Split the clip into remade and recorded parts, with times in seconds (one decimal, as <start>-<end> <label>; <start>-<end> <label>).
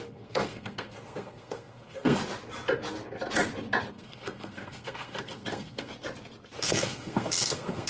0.0-2.2 remade; 2.2-3.9 recorded; 3.9-5.9 remade; 5.9-6.6 recorded; 6.6-7.9 remade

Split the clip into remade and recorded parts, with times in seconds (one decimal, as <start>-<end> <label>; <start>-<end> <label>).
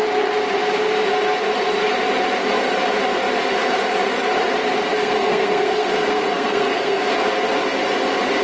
0.0-4.9 recorded; 4.9-7.1 remade; 7.1-8.4 recorded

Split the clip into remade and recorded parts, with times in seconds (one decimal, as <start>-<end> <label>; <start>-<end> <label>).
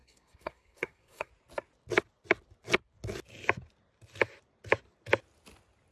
0.0-1.3 remade; 1.3-5.9 recorded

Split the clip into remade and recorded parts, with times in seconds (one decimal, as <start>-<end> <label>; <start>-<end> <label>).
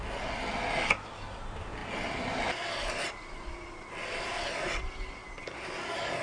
0.0-6.2 recorded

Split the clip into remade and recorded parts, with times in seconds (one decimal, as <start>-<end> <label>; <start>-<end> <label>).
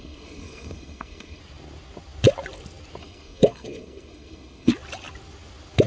0.0-1.4 remade; 1.4-3.0 recorded; 3.0-4.7 remade; 4.7-5.9 recorded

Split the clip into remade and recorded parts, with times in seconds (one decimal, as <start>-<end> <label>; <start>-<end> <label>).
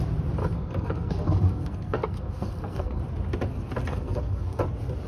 0.0-0.4 recorded; 0.4-3.0 remade; 3.0-3.9 recorded; 3.9-4.6 remade; 4.6-5.1 recorded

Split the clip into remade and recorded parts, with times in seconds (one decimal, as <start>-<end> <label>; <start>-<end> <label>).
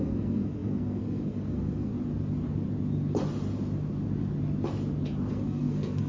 0.0-1.9 remade; 1.9-5.3 recorded; 5.3-6.1 remade